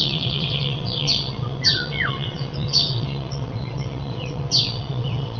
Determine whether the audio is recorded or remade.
remade